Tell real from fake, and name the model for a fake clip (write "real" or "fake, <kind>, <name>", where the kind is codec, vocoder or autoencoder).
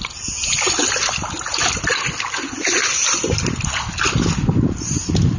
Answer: real